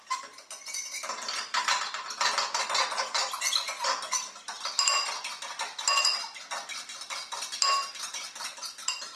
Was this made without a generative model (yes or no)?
yes